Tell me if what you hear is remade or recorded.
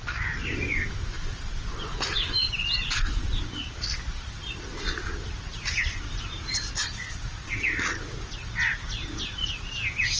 recorded